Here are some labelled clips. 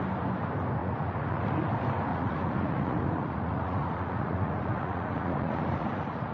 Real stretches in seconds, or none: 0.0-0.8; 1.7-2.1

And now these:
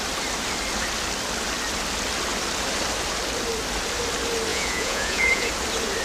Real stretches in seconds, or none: 0.0-4.5; 5.5-6.0

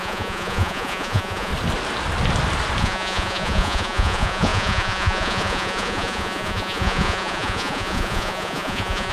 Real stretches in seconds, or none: 1.5-2.8